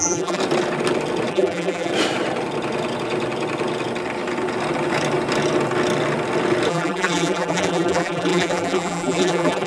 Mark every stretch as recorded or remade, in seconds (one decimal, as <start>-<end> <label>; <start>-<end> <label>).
0.0-0.4 remade; 0.4-1.3 recorded; 1.3-1.9 remade; 1.9-6.7 recorded; 6.7-9.7 remade